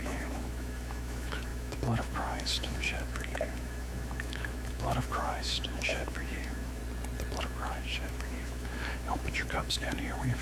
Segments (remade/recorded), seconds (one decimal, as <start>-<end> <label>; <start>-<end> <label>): 0.0-6.8 remade; 6.8-7.4 recorded; 7.4-10.4 remade